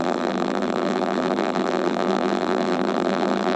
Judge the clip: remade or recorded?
remade